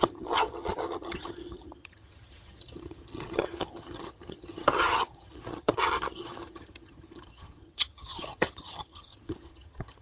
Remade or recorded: remade